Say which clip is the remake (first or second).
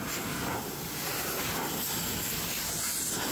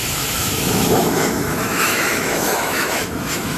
second